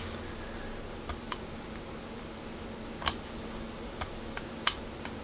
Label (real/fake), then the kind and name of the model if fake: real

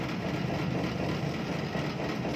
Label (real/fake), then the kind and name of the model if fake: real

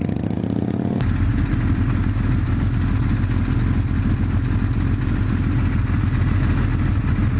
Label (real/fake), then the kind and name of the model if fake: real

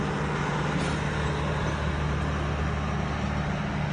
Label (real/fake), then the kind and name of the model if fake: real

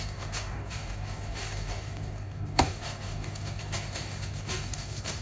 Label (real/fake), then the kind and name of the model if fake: fake, codec, DAC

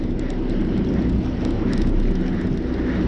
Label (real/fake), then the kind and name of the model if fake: real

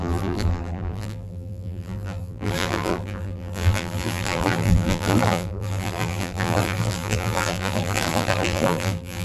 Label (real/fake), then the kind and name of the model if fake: fake, vocoder, BigVGAN v2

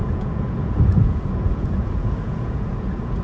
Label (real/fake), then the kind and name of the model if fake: fake, vocoder, Vocos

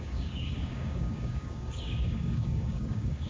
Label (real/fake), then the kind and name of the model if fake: fake, codec, DAC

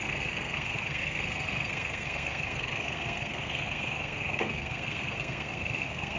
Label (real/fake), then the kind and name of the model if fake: fake, codec, SNAC